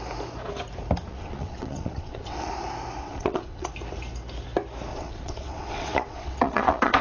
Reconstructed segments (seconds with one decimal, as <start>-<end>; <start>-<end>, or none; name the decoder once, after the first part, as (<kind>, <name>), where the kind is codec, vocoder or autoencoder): 1.1-2.5 (vocoder, WaveNeXt); 3.0-3.7; 4.9-7.0